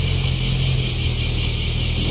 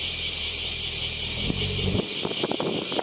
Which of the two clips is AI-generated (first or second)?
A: second